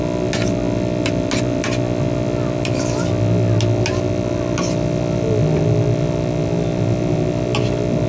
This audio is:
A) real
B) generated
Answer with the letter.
A